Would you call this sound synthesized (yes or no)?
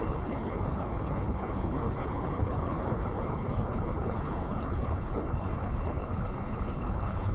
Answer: yes